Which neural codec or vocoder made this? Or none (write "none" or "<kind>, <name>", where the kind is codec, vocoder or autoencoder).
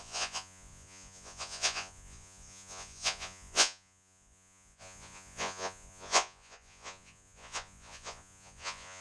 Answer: vocoder, Vocos